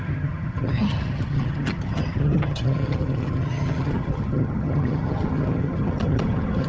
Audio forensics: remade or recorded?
remade